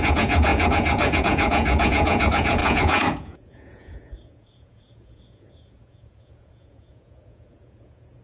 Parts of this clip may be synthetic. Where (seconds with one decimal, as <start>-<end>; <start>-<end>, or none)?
0.0-8.2